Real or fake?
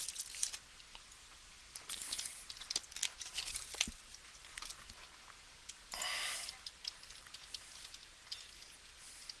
real